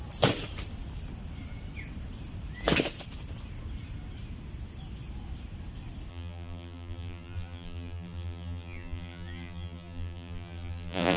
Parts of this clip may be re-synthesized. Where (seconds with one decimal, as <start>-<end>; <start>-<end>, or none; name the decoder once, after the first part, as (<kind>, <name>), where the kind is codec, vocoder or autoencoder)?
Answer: 6.1-11.2 (vocoder, BigVGAN v2)